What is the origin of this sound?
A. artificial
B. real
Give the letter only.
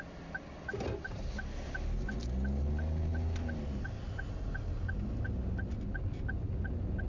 B